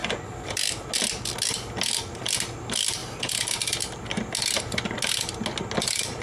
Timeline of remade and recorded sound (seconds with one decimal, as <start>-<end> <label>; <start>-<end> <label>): 0.0-6.2 recorded